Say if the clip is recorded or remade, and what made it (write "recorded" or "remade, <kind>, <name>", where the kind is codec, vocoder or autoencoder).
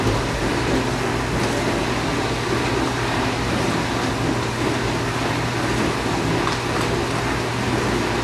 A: recorded